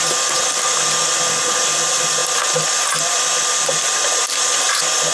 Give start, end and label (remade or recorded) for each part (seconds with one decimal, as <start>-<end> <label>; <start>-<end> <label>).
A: 0.0-5.1 recorded

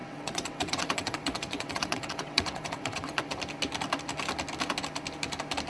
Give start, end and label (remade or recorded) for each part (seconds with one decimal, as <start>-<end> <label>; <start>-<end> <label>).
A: 0.0-3.4 remade; 3.4-5.7 recorded

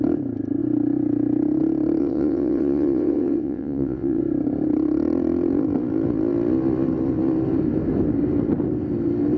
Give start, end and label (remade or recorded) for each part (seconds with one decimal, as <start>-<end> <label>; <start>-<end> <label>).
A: 0.0-2.0 recorded; 2.0-4.2 remade; 4.2-9.4 recorded

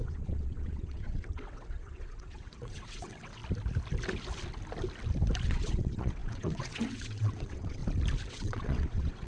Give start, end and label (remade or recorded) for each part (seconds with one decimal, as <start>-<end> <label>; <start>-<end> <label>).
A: 0.0-3.4 remade; 3.4-5.4 recorded; 5.4-7.8 remade; 7.8-8.3 recorded; 8.3-9.3 remade